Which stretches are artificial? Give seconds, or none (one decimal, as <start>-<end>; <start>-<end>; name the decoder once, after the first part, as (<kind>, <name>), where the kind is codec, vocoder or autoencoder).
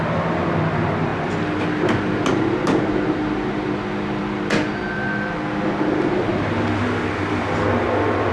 none